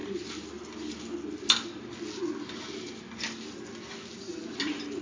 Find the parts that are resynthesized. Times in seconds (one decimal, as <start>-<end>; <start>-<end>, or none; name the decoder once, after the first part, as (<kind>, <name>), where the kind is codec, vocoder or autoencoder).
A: none